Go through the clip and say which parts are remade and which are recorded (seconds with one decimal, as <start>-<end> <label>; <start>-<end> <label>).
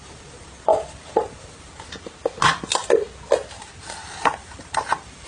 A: 0.0-1.7 remade; 1.7-4.0 recorded; 4.0-5.3 remade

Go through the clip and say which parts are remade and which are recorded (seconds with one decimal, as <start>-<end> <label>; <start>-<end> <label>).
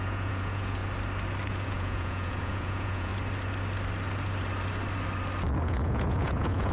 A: 0.0-0.8 remade; 0.8-1.5 recorded; 1.5-3.1 remade; 3.1-5.6 recorded; 5.6-6.7 remade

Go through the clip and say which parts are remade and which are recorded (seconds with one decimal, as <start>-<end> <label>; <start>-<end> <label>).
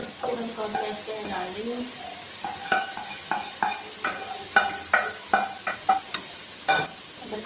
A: 0.0-2.6 recorded; 2.6-3.6 remade; 3.6-7.5 recorded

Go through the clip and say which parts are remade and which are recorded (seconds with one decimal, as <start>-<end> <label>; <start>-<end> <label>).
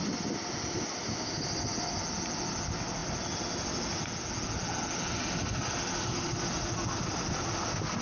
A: 0.0-8.0 recorded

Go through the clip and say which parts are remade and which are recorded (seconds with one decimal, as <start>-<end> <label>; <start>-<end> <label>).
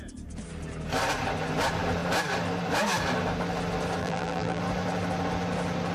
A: 0.0-4.0 recorded; 4.0-4.6 remade; 4.6-5.9 recorded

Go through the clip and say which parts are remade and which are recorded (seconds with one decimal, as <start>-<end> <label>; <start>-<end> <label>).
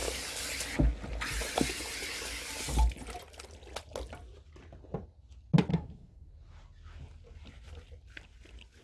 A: 0.0-5.7 recorded; 5.7-6.3 remade; 6.3-8.8 recorded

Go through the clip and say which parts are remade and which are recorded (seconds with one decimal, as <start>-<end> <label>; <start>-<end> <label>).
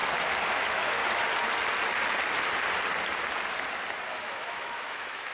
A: 0.0-0.5 recorded; 0.5-1.0 remade; 1.0-4.1 recorded; 4.1-5.3 remade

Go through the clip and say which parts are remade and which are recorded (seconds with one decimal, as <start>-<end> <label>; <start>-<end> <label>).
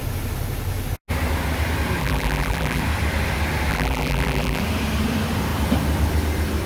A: 0.0-2.0 recorded; 2.0-2.8 remade; 2.8-3.7 recorded; 3.7-4.6 remade; 4.6-6.7 recorded